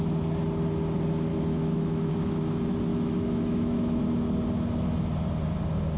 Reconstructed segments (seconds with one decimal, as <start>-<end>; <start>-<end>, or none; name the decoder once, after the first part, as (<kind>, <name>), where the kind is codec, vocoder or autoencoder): 1.3-2.1 (autoencoder, DAC-VAE); 2.9-4.0